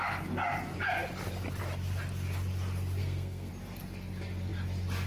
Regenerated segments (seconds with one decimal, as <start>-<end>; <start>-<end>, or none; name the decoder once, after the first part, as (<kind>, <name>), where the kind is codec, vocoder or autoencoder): 3.0-3.5 (codec, SNAC)